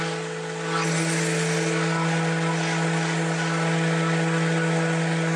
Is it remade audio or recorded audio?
recorded